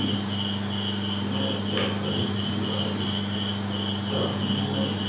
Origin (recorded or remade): recorded